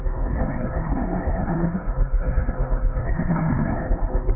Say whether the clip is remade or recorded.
remade